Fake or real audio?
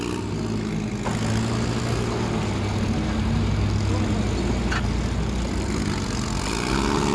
real